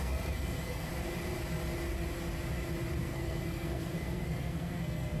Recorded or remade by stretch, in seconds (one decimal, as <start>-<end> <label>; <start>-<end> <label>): 0.0-0.9 remade; 0.9-3.0 recorded; 3.0-5.2 remade